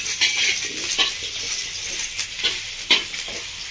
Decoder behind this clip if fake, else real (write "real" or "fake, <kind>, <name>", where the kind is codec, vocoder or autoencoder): real